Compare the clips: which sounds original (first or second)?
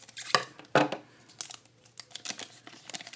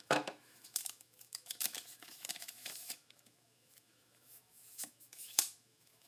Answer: first